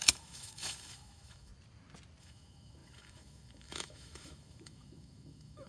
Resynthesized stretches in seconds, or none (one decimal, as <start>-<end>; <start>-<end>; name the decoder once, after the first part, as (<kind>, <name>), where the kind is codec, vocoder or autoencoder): 0.0-1.5 (autoencoder, DAC-VAE); 2.2-5.7